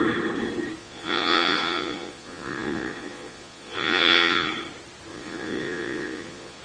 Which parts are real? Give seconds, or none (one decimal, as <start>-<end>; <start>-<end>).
0.0-0.8; 4.5-5.1